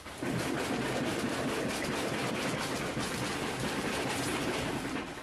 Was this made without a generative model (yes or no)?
yes